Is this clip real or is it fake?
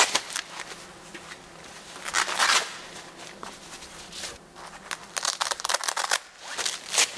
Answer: real